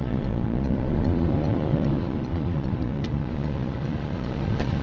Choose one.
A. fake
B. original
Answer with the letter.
A